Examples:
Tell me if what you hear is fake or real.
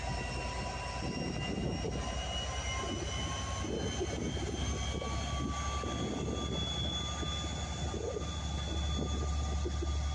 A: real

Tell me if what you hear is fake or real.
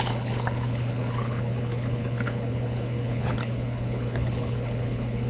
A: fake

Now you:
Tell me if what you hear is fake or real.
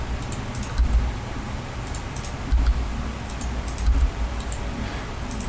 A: real